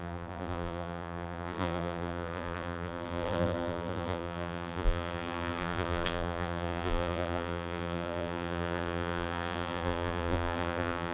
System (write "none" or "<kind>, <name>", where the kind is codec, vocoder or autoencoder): vocoder, BigVGAN v2